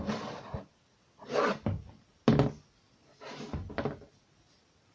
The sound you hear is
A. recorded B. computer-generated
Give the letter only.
A